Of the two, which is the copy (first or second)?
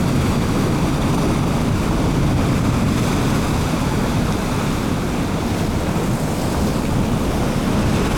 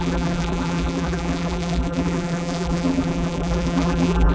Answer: second